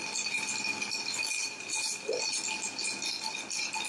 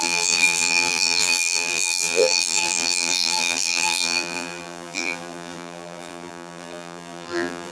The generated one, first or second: second